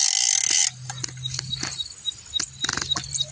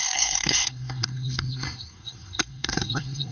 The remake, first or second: second